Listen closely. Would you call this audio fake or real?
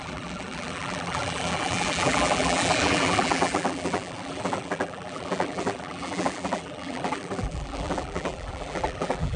fake